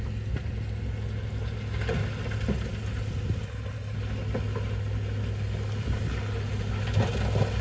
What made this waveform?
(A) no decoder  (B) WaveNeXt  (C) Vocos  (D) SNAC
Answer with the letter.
A